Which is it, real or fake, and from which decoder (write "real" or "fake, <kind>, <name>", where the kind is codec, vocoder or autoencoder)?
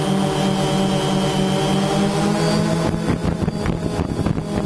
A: real